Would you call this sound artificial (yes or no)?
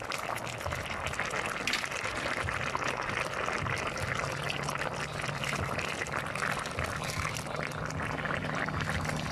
no